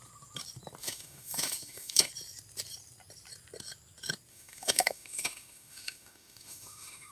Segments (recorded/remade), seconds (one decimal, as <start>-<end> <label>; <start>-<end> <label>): 0.0-0.8 recorded; 0.8-2.1 remade; 2.1-4.3 recorded; 4.3-7.1 remade

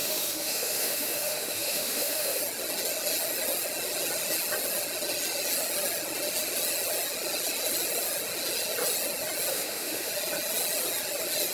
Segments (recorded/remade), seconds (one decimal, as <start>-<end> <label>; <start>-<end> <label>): 0.0-2.4 remade; 2.4-9.5 recorded; 9.5-10.1 remade; 10.1-11.5 recorded

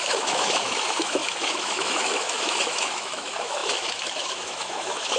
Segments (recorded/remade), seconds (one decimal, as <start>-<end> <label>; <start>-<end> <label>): 0.0-5.2 remade